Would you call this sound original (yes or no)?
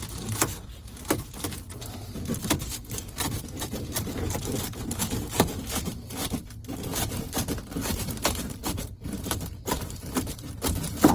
no